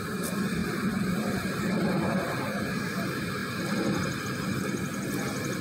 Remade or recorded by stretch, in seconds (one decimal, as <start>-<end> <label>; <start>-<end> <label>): 0.0-3.4 remade; 3.4-4.2 recorded; 4.2-5.6 remade